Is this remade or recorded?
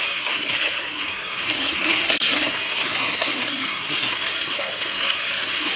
remade